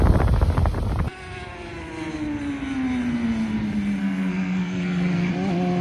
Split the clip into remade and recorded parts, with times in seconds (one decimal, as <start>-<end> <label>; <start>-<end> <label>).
0.0-4.0 recorded; 4.0-5.3 remade; 5.3-5.8 recorded